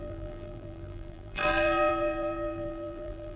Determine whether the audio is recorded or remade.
remade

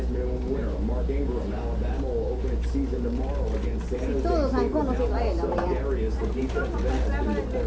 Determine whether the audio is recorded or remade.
recorded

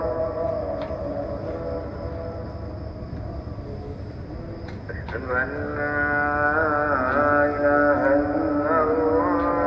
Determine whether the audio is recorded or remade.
recorded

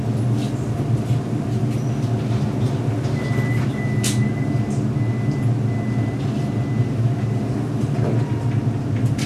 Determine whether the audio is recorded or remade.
recorded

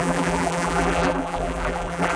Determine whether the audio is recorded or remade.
remade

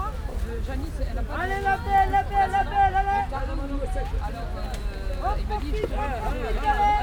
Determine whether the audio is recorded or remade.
recorded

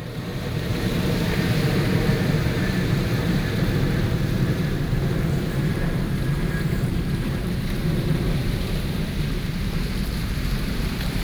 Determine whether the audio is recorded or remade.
remade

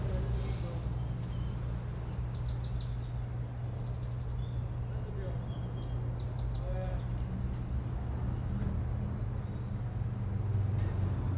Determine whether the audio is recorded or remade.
recorded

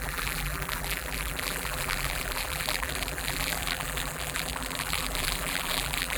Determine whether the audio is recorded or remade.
remade